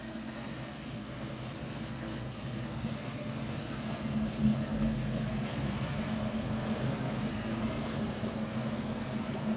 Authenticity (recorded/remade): remade